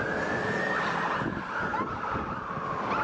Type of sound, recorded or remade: recorded